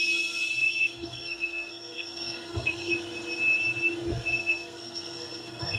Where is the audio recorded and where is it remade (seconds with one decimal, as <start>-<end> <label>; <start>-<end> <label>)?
0.0-0.6 recorded; 0.6-2.9 remade; 2.9-4.4 recorded; 4.4-5.8 remade